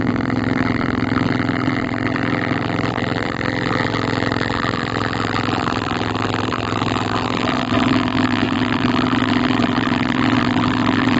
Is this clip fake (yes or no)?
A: yes